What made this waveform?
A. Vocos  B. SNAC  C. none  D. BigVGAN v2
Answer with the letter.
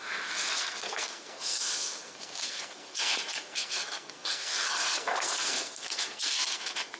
B